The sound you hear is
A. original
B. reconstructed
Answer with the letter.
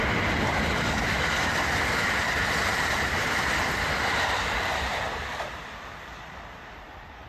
B